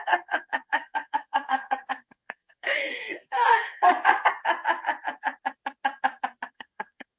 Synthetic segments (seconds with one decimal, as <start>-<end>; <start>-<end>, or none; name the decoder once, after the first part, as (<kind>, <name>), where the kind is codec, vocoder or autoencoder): 0.0-4.4 (codec, SNAC); 6.5-7.2